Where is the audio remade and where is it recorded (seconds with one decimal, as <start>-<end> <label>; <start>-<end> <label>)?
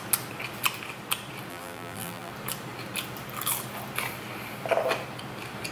0.0-1.5 recorded; 1.5-2.3 remade; 2.3-5.7 recorded